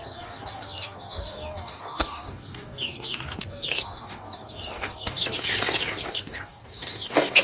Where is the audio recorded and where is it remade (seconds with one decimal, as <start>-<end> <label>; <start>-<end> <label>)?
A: 0.0-7.4 remade